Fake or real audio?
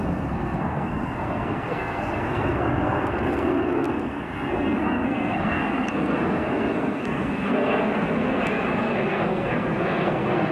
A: fake